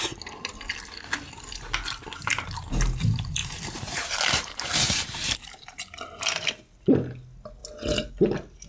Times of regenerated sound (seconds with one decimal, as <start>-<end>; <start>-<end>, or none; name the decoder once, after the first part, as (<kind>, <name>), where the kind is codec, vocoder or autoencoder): 3.4-6.5 (vocoder, BigVGAN v2)